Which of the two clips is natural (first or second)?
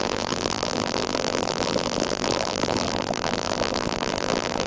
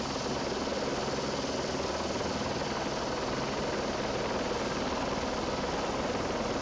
second